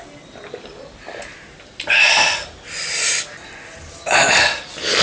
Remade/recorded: recorded